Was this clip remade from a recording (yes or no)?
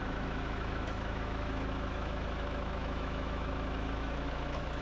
yes